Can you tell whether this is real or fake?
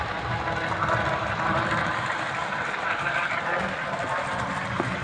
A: real